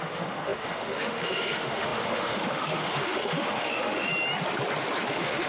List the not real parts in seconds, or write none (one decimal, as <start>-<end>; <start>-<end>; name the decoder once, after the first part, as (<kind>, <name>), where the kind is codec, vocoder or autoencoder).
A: 0.0-4.1 (autoencoder, DAC-VAE); 5.1-5.5